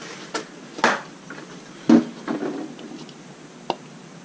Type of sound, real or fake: real